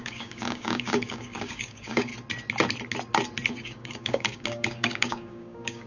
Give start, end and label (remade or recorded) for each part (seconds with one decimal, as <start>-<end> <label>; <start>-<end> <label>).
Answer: 0.0-2.1 remade; 2.1-3.5 recorded; 3.5-5.9 remade